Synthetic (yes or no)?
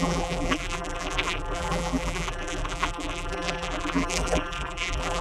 yes